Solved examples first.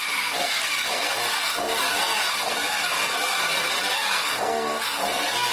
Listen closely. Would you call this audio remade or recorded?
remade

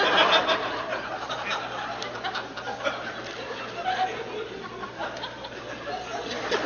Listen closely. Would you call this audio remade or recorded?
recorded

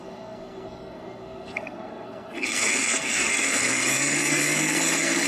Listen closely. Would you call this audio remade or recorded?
remade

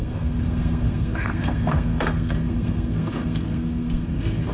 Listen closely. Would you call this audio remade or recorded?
remade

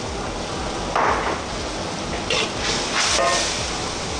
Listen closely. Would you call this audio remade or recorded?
recorded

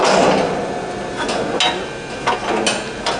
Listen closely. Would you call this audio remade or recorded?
recorded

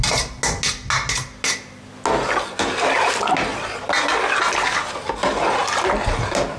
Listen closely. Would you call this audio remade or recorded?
recorded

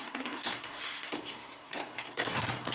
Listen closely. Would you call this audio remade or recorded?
remade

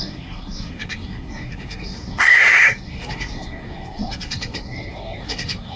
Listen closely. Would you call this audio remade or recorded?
remade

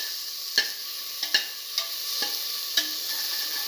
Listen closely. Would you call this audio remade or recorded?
recorded